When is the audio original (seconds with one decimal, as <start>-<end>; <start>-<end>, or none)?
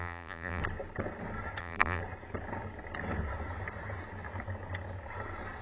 0.6-1.6; 2.0-5.6